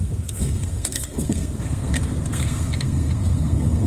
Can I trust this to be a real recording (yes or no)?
no